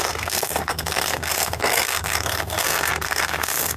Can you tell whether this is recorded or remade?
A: remade